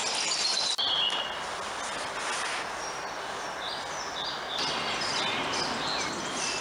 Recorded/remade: recorded